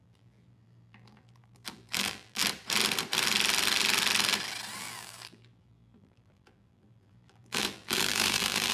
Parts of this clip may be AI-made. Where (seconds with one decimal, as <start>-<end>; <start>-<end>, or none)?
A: 0.0-2.4; 4.8-8.7